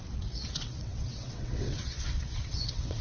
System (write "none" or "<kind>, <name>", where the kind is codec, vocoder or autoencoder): vocoder, WaveNeXt